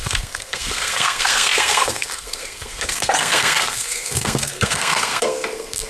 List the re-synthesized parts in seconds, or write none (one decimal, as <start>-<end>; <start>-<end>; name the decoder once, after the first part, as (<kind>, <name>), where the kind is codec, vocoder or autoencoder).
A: 0.0-5.9 (codec, SNAC)